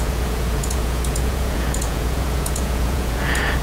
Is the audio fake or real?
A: fake